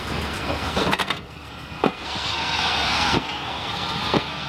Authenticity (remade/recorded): remade